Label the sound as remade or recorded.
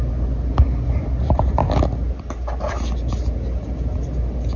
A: recorded